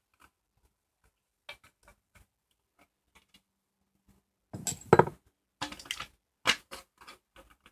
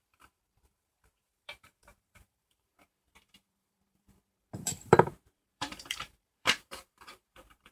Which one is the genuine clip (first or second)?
first